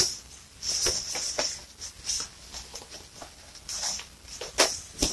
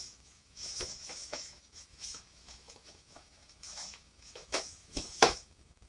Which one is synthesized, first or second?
second